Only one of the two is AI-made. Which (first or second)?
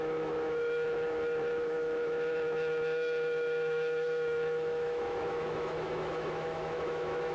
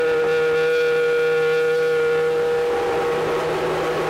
first